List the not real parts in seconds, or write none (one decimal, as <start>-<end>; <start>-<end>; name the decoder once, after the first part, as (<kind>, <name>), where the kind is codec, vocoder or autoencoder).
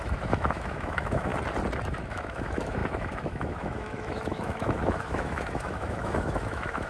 0.0-1.3 (autoencoder, DAC-VAE); 1.9-6.9